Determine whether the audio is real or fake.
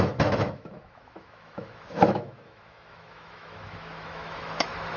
fake